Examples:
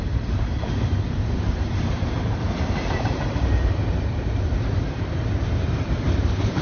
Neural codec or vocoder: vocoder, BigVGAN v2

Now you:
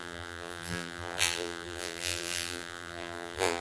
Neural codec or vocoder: vocoder, BigVGAN v2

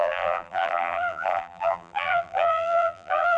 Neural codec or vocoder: vocoder, BigVGAN v2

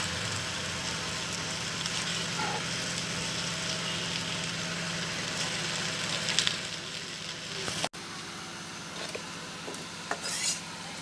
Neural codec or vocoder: none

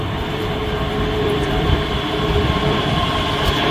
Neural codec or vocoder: vocoder, BigVGAN v2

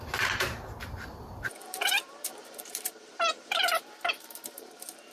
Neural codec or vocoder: vocoder, BigVGAN v2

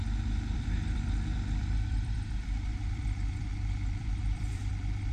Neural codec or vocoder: vocoder, BigVGAN v2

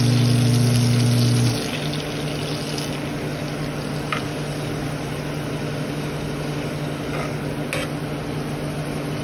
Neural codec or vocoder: none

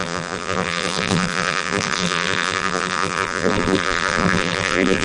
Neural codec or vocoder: vocoder, BigVGAN v2